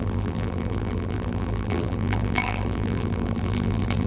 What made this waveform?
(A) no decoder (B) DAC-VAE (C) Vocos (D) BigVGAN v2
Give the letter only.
D